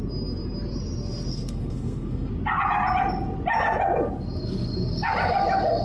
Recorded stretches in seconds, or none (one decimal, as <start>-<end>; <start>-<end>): 0.0-1.3; 2.3-5.8